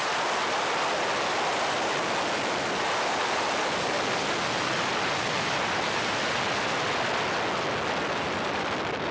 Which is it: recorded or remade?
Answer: recorded